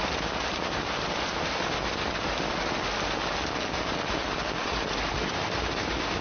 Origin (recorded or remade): recorded